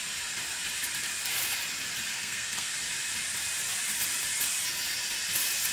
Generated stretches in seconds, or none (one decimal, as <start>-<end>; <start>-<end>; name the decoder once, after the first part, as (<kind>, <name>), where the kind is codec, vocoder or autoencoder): 2.1-2.7 (codec, SNAC)